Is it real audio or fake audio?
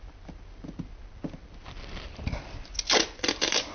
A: real